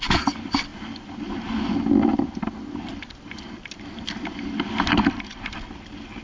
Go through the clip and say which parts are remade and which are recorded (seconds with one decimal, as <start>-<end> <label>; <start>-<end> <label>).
0.0-6.2 recorded